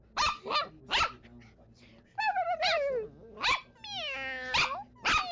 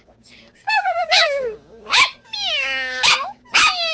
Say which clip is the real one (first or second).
first